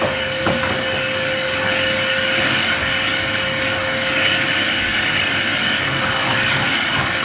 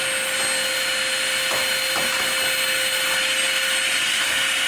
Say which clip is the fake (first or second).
first